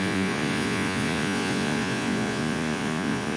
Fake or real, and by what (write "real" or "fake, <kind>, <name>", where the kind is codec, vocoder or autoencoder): fake, vocoder, Vocos